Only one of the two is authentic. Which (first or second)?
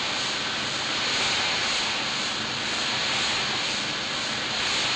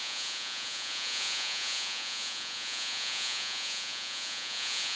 first